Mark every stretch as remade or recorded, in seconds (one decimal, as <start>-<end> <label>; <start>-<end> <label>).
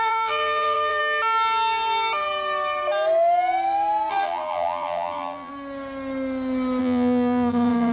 0.0-1.0 remade; 1.0-4.1 recorded; 4.1-5.5 remade; 5.5-6.8 recorded; 6.8-7.9 remade